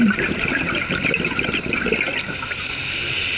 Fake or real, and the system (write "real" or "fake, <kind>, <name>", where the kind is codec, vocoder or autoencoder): real